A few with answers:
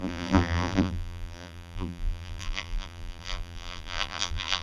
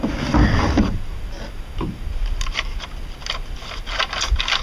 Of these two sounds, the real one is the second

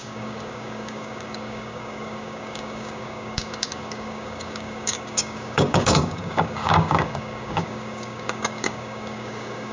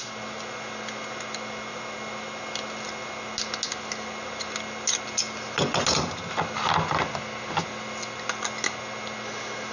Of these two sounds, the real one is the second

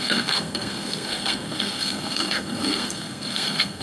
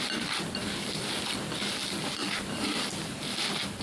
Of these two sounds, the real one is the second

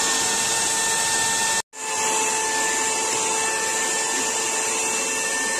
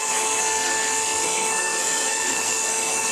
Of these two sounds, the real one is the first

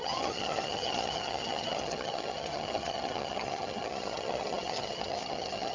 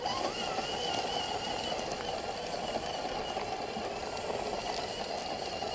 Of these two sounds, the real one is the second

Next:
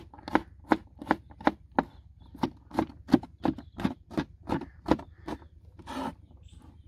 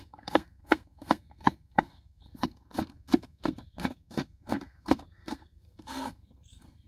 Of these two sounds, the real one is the first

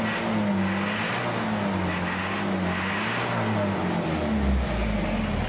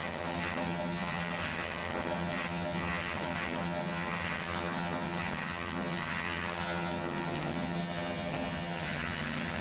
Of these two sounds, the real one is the first